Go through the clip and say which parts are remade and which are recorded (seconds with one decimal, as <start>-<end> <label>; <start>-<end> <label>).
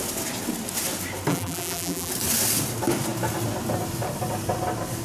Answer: 0.0-1.3 recorded; 1.3-2.1 remade; 2.1-5.0 recorded